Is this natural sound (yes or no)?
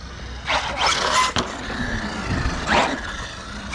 yes